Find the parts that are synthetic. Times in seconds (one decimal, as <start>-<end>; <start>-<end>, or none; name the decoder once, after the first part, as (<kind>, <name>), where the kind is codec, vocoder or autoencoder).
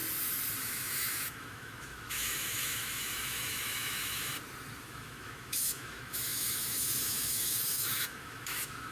0.6-4.3 (autoencoder, DAC-VAE); 4.8-8.9